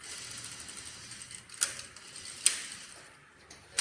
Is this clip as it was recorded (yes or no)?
yes